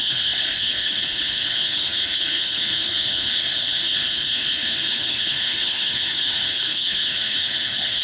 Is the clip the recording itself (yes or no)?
no